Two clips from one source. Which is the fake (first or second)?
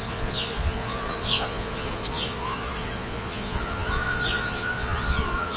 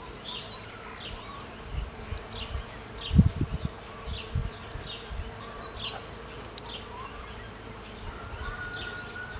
first